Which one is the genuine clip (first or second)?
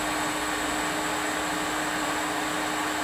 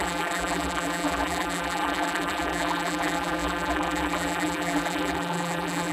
first